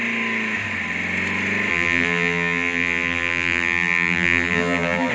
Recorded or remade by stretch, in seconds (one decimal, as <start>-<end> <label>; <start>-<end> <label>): 0.0-1.7 recorded; 1.7-5.1 remade